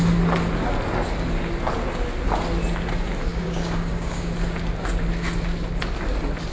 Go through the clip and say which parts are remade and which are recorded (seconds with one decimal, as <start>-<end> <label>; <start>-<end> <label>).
0.0-3.3 recorded; 3.3-4.3 remade; 4.3-6.5 recorded

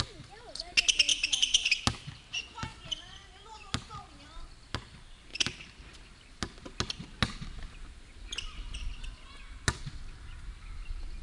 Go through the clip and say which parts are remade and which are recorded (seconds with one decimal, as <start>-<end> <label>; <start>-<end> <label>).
0.0-1.1 recorded; 1.1-1.8 remade; 1.8-2.7 recorded; 2.7-3.7 remade; 3.7-11.2 recorded

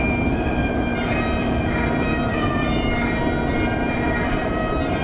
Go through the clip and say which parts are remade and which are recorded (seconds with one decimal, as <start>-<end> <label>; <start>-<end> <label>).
0.0-5.0 remade

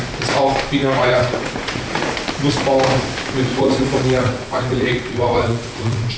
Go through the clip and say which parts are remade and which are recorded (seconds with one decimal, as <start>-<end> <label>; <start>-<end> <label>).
0.0-0.8 recorded; 0.8-2.1 remade; 2.1-3.5 recorded; 3.5-6.2 remade

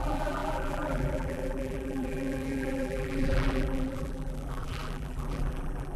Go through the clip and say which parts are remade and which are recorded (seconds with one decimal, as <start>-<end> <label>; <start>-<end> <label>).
0.0-6.0 remade